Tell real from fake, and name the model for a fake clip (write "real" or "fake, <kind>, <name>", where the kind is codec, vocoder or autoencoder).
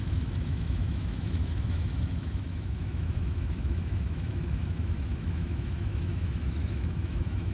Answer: fake, autoencoder, DAC-VAE